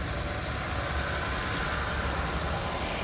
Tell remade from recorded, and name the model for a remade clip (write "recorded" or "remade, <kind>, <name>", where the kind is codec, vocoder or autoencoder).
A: recorded